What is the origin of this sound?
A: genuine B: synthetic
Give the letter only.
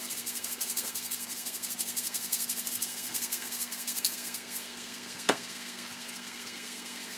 B